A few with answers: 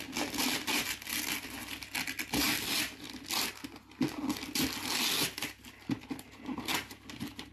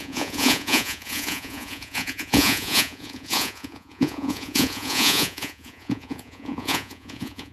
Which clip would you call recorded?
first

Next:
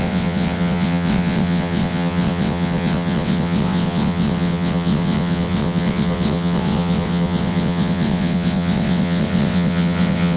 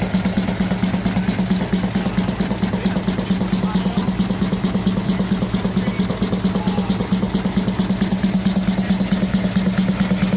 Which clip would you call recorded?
second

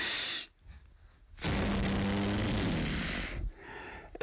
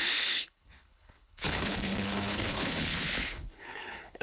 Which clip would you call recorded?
first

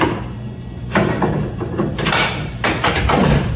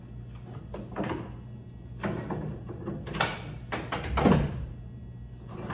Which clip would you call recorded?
second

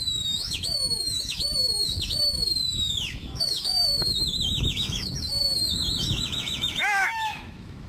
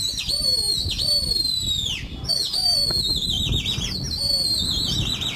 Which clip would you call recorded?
second